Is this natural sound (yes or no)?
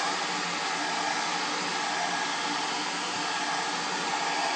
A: yes